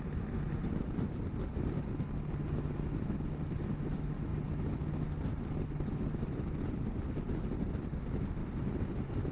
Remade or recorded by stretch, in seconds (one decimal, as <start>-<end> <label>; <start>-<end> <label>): 0.0-9.3 recorded